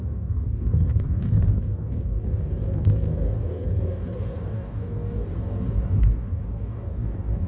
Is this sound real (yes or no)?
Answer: no